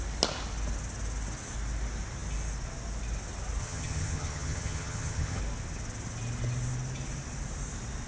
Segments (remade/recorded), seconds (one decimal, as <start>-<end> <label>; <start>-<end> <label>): 0.0-3.6 recorded; 3.6-5.4 remade; 5.4-8.1 recorded